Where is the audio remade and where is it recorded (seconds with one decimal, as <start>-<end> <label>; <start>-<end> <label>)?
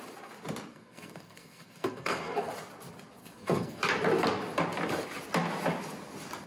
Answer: 0.0-0.7 recorded; 0.7-2.5 remade; 2.5-3.2 recorded; 3.2-3.8 remade; 3.8-6.5 recorded